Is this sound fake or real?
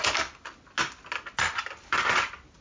real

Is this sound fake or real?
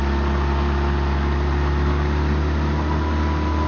real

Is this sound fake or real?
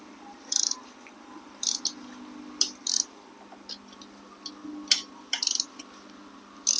real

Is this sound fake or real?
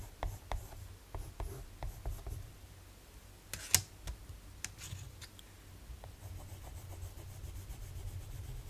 real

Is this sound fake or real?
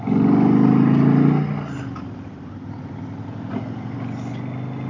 real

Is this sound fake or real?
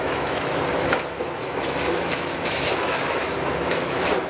fake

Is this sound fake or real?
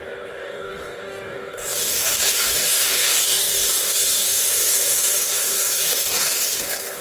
fake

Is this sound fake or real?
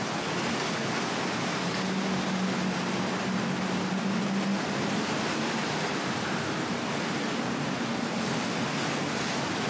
real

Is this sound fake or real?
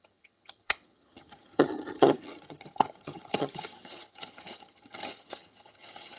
fake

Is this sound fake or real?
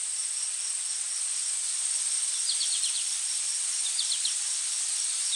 real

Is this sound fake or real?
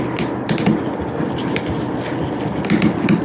real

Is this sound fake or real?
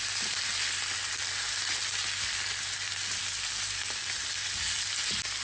real